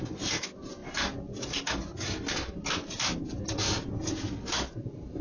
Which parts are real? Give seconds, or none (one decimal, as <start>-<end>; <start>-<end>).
0.0-5.2